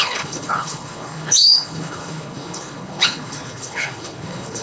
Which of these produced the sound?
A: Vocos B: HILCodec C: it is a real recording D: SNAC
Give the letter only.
B